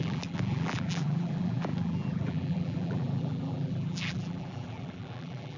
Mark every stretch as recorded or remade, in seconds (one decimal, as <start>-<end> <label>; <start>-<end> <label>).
0.0-5.6 remade